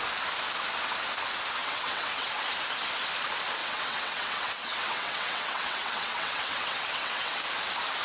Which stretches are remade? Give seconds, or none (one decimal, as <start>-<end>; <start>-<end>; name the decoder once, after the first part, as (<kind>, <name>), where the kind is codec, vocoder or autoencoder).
1.6-2.3 (vocoder, WaveNeXt); 3.6-7.4